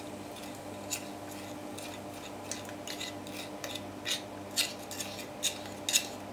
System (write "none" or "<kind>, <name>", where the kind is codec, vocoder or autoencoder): none